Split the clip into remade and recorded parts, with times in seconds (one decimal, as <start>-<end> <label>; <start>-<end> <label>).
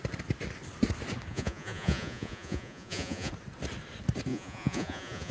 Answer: 0.0-1.3 recorded; 1.3-3.3 remade; 3.3-4.3 recorded; 4.3-5.3 remade